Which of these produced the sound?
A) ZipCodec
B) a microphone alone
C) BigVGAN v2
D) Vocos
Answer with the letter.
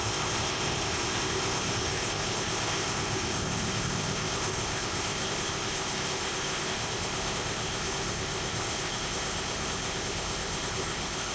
A